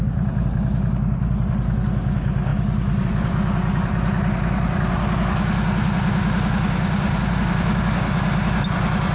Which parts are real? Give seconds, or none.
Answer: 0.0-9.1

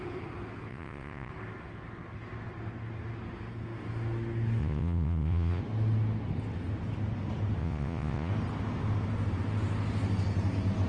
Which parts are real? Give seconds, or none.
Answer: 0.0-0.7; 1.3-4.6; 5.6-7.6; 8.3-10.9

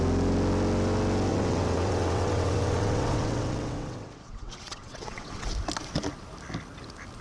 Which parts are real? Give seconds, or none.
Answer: 0.0-1.3; 5.5-7.2

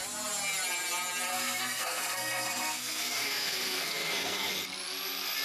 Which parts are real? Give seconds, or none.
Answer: 0.0-1.3; 4.5-5.4

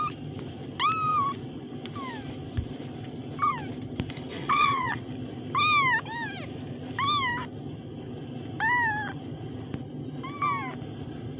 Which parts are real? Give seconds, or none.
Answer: 0.0-4.3; 5.0-11.4

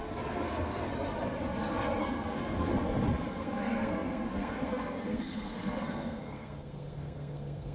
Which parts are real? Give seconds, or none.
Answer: 0.9-2.0; 2.7-3.3